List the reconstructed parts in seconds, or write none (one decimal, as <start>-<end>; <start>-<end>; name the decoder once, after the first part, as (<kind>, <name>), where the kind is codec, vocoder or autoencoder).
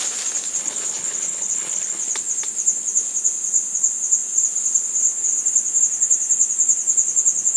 0.6-2.0 (codec, HILCodec)